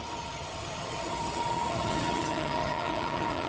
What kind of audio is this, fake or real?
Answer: fake